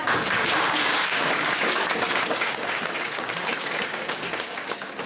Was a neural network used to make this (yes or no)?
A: yes